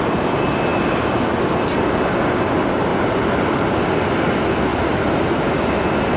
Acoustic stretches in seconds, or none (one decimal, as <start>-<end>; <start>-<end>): 0.0-2.9; 3.8-4.7; 5.5-6.2